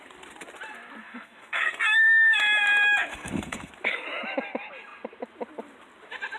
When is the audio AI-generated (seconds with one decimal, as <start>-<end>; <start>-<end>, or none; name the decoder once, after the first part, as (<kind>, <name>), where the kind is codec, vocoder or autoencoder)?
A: 1.0-2.4 (codec, SNAC); 3.1-3.7